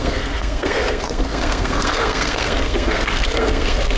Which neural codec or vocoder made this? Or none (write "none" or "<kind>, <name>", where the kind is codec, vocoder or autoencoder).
codec, SNAC